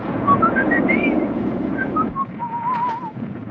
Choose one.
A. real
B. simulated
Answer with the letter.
B